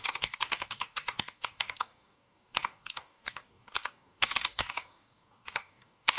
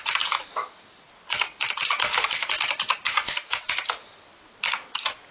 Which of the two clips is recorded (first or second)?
second